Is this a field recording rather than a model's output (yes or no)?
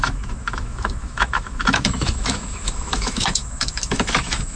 no